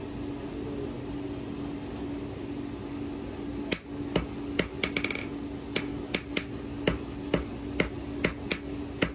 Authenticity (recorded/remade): recorded